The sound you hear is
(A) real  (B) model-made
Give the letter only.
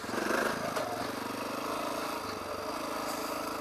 A